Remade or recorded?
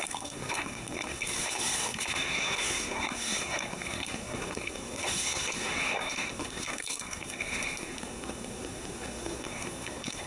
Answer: remade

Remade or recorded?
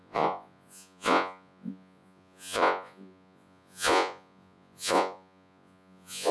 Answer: remade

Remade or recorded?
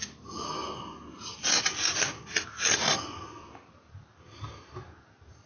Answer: recorded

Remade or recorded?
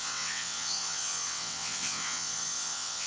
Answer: remade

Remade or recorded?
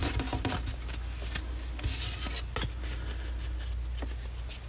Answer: recorded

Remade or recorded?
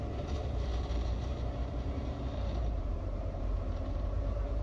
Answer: remade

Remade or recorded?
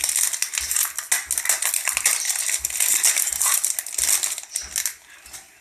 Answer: recorded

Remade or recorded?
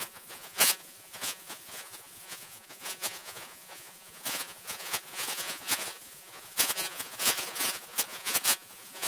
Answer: remade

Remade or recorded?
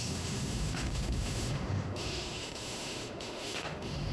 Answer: remade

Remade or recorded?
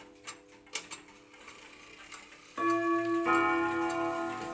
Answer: recorded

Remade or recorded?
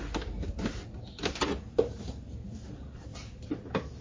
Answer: recorded